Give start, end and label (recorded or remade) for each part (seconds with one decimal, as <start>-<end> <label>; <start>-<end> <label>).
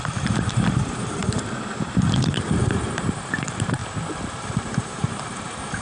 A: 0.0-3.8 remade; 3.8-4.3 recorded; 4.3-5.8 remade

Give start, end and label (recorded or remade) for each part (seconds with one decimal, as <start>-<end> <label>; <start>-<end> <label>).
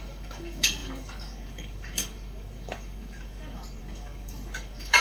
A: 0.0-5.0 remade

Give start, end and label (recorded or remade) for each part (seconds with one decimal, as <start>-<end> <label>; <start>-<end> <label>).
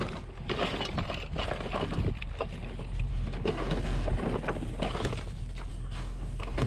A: 0.0-3.1 recorded; 3.1-4.1 remade; 4.1-5.7 recorded; 5.7-6.7 remade